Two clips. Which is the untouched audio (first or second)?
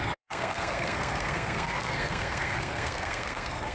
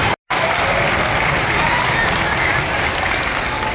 second